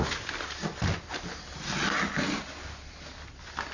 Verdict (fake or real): real